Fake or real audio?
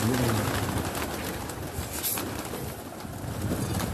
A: real